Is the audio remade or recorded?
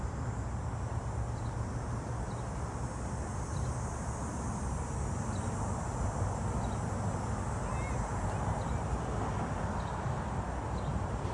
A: recorded